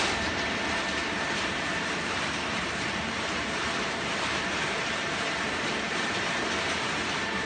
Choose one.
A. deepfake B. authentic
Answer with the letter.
A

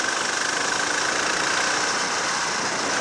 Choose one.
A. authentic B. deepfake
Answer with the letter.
A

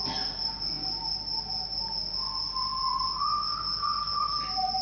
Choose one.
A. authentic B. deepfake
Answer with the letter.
A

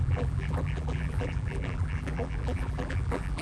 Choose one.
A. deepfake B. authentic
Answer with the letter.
A